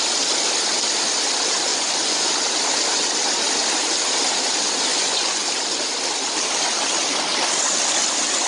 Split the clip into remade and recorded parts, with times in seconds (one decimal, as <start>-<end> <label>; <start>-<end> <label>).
0.0-1.7 recorded; 1.7-2.3 remade; 2.3-4.9 recorded; 4.9-5.5 remade; 5.5-8.5 recorded